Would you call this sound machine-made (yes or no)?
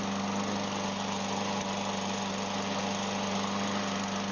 no